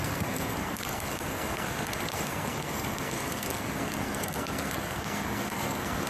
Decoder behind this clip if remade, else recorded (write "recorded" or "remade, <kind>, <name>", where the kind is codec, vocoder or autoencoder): remade, codec, SNAC